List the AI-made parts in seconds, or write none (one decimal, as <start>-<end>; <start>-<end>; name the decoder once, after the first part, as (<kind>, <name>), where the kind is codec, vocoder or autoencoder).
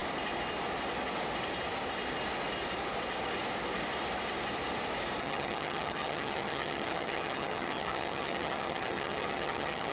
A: 5.2-9.9 (vocoder, HiFi-GAN)